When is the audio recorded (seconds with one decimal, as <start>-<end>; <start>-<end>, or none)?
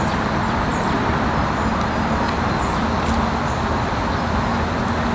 0.0-5.1